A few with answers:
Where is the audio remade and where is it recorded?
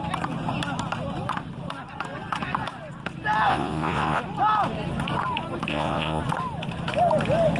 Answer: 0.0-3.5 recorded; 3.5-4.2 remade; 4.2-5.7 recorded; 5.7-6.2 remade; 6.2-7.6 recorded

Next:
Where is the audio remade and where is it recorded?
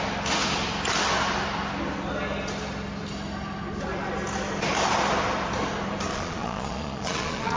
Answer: 0.0-6.1 recorded; 6.1-7.6 remade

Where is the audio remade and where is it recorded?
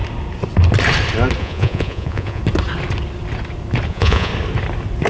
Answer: 0.0-1.4 recorded; 1.4-2.4 remade; 2.4-3.9 recorded; 3.9-4.3 remade; 4.3-5.1 recorded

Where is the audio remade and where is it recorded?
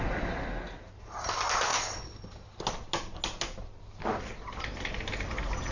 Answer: 0.0-5.7 recorded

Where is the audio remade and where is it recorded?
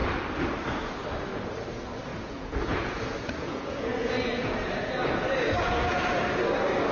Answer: 0.0-2.1 recorded; 2.1-6.2 remade; 6.2-6.9 recorded